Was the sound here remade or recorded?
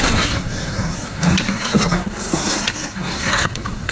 remade